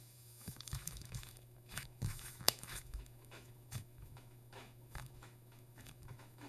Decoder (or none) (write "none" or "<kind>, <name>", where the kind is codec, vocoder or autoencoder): autoencoder, DAC-VAE